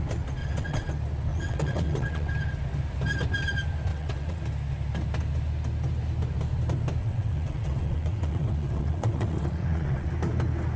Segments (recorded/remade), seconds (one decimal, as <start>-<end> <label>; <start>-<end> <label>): 0.0-0.4 recorded; 0.4-0.9 remade; 0.9-1.3 recorded; 1.3-2.3 remade; 2.3-3.9 recorded; 3.9-4.4 remade; 4.4-7.0 recorded; 7.0-10.1 remade; 10.1-10.8 recorded